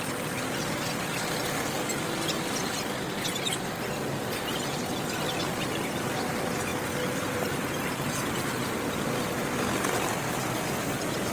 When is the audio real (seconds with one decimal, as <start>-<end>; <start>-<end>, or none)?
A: 0.0-11.3